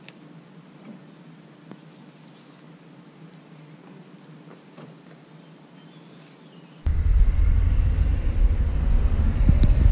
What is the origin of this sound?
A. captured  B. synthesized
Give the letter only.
A